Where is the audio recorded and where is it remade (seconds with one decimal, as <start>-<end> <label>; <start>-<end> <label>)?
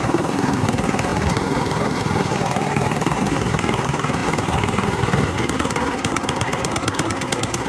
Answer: 0.0-7.7 remade